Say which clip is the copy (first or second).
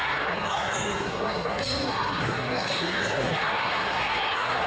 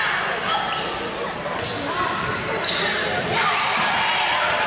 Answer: first